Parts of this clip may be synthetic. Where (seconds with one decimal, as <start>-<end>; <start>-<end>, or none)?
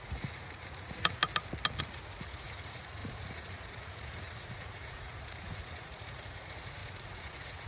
0.0-1.2; 1.8-7.7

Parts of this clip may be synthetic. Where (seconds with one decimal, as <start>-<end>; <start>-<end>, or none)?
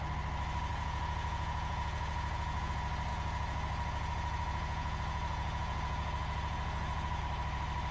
0.7-2.7; 3.1-7.2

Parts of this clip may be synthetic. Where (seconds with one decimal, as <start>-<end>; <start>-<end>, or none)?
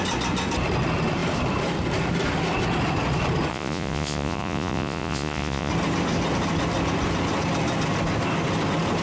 3.5-5.7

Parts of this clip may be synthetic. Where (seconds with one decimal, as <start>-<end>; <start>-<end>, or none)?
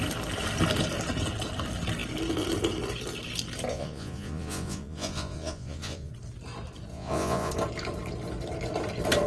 3.7-6.1; 6.9-7.5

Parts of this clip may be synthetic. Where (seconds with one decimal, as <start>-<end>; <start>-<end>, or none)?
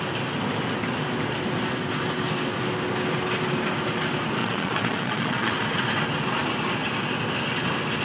4.4-5.5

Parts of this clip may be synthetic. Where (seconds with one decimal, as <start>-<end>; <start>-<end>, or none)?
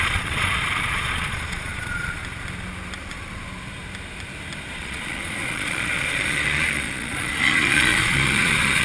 0.0-2.2; 4.7-8.8